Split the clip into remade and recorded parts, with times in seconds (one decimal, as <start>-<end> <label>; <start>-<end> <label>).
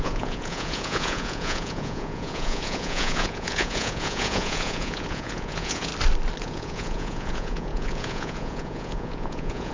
0.0-5.9 remade; 5.9-6.4 recorded; 6.4-9.7 remade